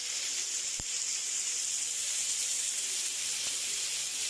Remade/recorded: recorded